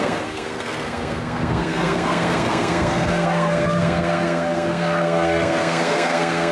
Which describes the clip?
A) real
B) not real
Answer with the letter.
B